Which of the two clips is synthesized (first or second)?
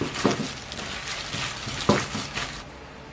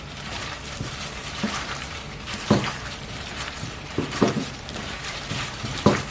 second